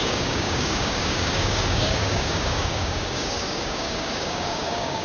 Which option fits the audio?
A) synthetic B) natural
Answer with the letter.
A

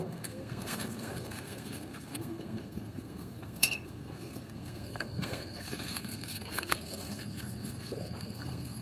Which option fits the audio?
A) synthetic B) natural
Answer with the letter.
A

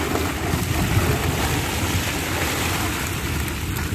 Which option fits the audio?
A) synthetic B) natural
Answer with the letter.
B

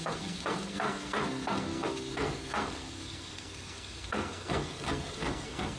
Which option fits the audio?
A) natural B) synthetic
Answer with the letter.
B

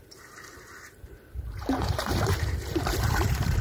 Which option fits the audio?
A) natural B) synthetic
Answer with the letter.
B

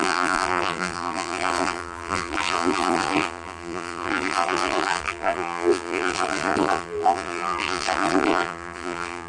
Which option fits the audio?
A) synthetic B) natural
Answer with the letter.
A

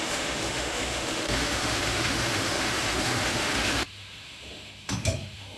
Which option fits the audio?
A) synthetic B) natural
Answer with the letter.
A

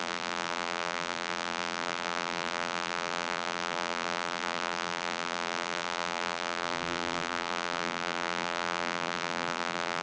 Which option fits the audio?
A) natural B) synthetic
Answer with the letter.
B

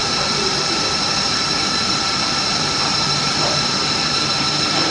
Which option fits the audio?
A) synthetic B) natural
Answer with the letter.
A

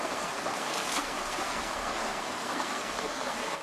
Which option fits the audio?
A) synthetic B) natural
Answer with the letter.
A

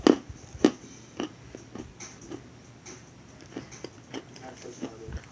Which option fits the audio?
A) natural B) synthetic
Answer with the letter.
A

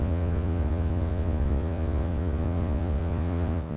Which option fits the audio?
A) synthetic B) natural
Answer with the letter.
A